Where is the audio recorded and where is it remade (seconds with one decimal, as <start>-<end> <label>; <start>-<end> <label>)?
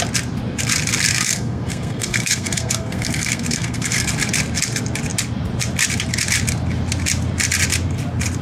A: 0.0-1.1 recorded; 1.1-4.1 remade; 4.1-8.4 recorded